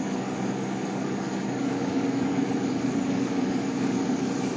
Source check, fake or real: fake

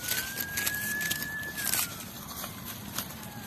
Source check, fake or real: fake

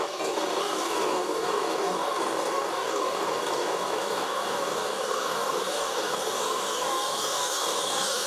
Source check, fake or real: fake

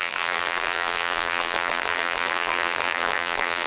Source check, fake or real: fake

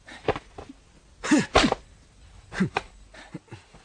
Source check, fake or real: real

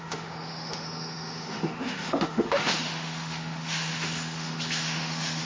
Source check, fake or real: fake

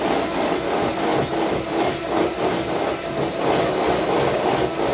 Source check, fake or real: real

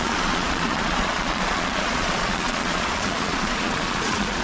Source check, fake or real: fake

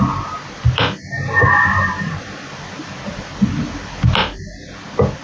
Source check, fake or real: real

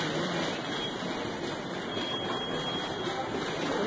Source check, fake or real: real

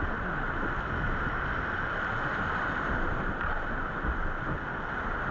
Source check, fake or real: real